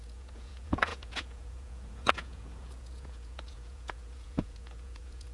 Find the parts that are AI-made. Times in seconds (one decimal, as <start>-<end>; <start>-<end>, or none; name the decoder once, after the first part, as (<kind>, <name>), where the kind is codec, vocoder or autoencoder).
0.0-5.3 (vocoder, Vocos)